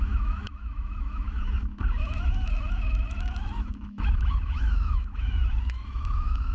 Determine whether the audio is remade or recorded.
remade